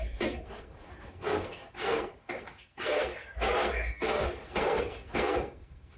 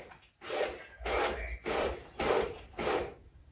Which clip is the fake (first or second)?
first